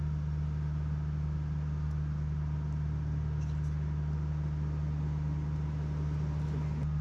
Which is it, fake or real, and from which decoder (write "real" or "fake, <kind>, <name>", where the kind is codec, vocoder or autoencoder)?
real